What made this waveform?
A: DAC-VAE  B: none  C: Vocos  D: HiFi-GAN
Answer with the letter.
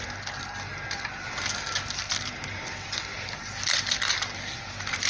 B